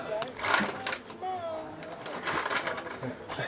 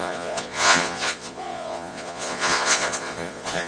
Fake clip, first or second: second